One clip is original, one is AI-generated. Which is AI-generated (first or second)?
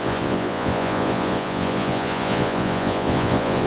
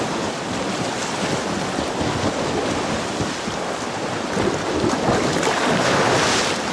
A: first